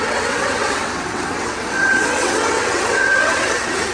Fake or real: fake